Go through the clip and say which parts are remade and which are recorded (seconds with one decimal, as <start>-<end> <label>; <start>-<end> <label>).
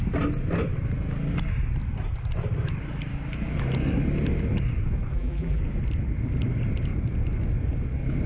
0.0-5.1 recorded; 5.1-5.6 remade; 5.6-8.3 recorded